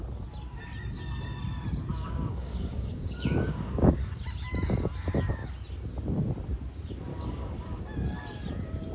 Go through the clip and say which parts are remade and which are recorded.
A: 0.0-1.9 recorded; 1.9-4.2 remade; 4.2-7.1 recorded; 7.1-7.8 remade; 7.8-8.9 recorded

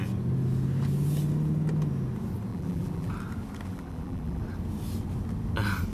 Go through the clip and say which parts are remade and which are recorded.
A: 0.0-2.5 recorded; 2.5-3.1 remade; 3.1-3.7 recorded; 3.7-4.4 remade; 4.4-5.9 recorded